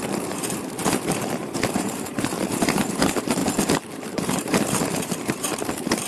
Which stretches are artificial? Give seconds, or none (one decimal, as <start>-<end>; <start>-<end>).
0.0-3.4; 4.1-6.1